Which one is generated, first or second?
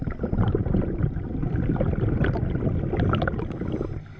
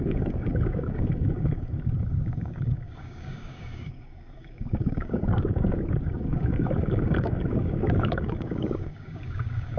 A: second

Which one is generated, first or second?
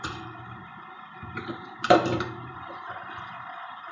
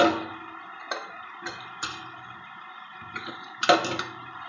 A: first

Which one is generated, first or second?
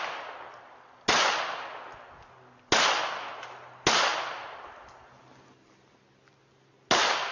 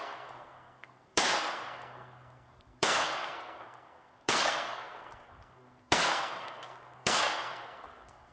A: second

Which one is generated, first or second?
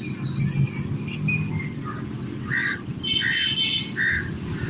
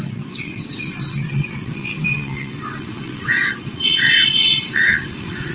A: second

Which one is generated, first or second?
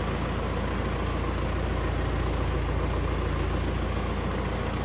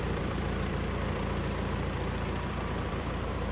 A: second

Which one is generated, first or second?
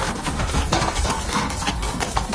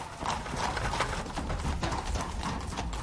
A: first